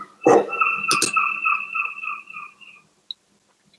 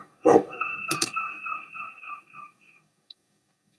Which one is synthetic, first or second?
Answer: second